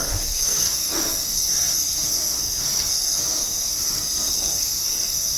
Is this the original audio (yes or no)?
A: no